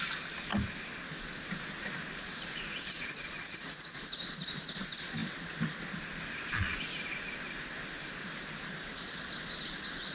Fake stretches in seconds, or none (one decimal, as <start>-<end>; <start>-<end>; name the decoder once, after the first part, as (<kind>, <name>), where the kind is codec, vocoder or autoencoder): 3.4-4.0 (vocoder, Vocos)